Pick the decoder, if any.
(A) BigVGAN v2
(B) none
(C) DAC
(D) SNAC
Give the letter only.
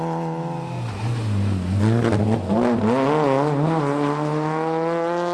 B